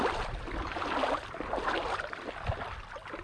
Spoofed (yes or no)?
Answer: no